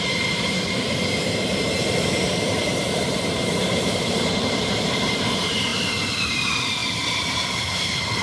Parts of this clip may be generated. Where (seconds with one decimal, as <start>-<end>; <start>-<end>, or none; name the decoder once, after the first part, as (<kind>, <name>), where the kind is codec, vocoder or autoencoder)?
0.0-5.7 (vocoder, BigVGAN v2); 6.3-6.8; 7.5-8.2